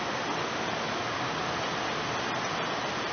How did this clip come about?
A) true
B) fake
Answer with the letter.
A